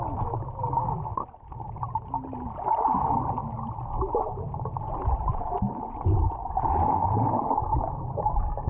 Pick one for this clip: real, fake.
real